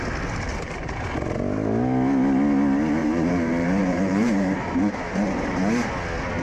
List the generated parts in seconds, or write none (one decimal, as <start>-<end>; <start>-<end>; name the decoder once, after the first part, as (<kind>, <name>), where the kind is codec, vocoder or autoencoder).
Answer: 0.5-1.1 (vocoder, BigVGAN v2); 3.0-5.9